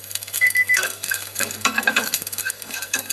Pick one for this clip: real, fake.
fake